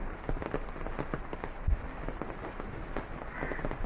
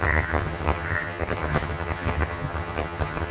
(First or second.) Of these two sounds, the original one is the first